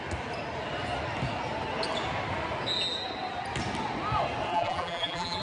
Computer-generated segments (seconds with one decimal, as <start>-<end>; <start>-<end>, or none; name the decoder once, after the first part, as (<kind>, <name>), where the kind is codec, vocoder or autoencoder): 4.5-5.4 (vocoder, BigVGAN v2)